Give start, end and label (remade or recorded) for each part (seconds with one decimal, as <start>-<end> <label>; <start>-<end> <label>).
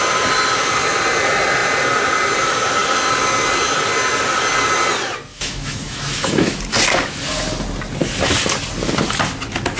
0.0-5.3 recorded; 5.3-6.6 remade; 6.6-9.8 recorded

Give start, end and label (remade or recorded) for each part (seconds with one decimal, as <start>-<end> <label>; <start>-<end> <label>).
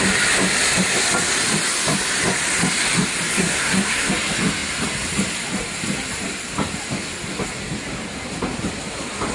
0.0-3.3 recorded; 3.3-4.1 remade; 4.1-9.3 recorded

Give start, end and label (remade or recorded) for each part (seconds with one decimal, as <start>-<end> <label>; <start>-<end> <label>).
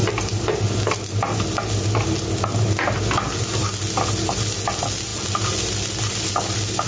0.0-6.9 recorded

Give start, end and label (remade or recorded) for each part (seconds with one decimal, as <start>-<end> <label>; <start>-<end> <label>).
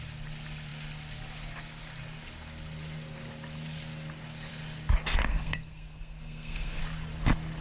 0.0-5.3 recorded; 5.3-6.8 remade; 6.8-7.6 recorded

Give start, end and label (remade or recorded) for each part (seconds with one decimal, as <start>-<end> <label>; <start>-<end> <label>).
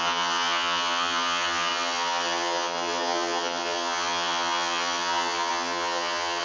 0.0-6.4 remade